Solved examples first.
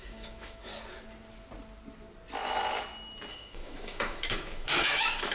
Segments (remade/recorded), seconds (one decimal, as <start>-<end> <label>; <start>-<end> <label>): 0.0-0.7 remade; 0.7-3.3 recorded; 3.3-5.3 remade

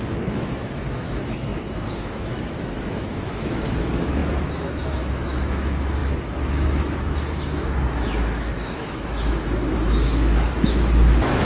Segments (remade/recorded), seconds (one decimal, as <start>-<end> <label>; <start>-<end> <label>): 0.0-11.4 remade

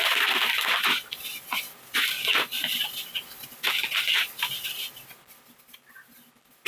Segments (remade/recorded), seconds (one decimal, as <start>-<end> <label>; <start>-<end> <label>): 0.0-6.7 recorded

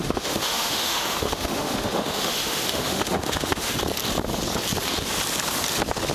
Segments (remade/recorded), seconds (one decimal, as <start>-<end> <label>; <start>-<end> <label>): 0.0-3.7 remade; 3.7-6.1 recorded